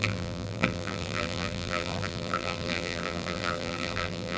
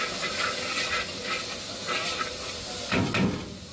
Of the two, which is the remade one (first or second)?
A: first